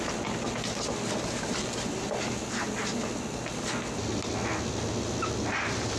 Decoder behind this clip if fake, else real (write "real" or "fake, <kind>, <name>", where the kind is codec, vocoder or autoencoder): real